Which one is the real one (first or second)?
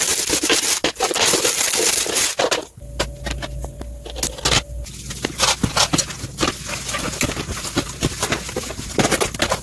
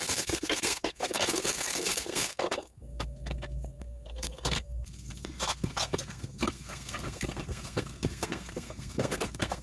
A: first